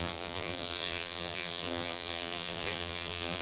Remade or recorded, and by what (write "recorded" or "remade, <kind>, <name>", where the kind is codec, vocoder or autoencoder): remade, vocoder, BigVGAN v2